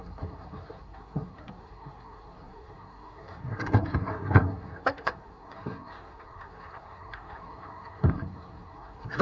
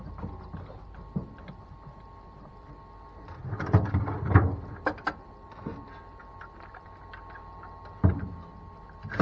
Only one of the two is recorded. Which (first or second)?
second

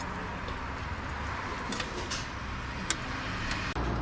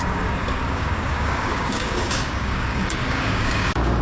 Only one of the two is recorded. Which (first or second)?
first